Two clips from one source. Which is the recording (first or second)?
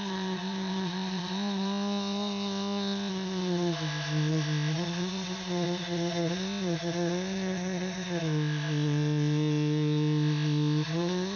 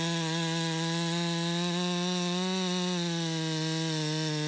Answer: second